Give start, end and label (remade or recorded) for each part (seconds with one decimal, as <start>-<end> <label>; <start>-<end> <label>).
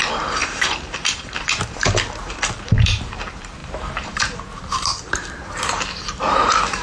0.0-6.8 remade